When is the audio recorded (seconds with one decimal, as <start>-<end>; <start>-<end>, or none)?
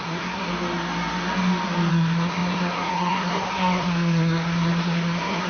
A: 0.5-1.9